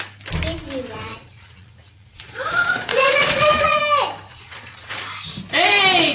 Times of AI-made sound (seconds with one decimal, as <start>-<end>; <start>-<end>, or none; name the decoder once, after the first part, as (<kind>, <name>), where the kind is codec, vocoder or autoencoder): 1.1-3.8 (vocoder, Vocos); 4.3-5.0